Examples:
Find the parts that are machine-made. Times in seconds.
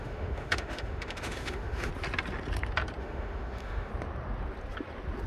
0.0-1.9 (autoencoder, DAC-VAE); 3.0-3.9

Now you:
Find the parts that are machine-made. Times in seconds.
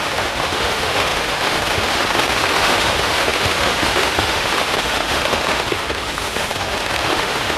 0.0-7.6 (autoencoder, DAC-VAE)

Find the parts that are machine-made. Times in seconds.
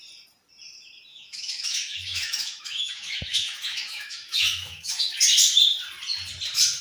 1.1-5.2 (autoencoder, DAC-VAE)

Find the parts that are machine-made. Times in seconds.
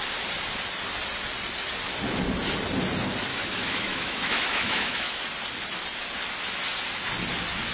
3.3-5.2 (autoencoder, DAC-VAE)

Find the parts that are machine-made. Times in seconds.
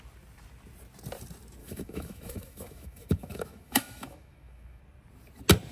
1.6-4.8 (autoencoder, DAC-VAE)